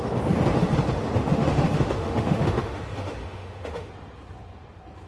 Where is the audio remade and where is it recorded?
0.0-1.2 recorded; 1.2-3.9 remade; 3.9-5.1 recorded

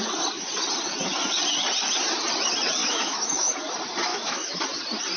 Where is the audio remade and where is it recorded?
0.0-2.8 recorded; 2.8-3.5 remade; 3.5-4.1 recorded; 4.1-4.6 remade; 4.6-5.2 recorded